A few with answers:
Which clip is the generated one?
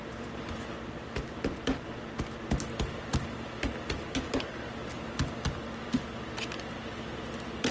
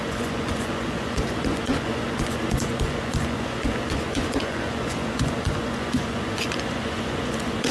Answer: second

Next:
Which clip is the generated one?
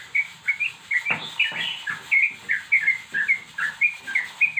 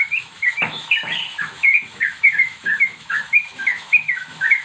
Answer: second